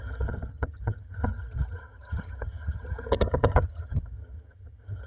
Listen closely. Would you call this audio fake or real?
fake